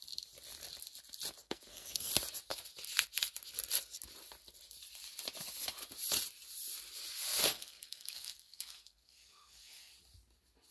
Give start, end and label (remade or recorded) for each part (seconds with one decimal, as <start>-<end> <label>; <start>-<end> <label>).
0.0-1.4 recorded; 1.4-2.1 remade; 2.1-7.4 recorded; 7.4-9.9 remade; 9.9-10.7 recorded